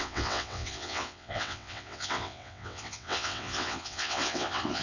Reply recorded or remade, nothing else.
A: remade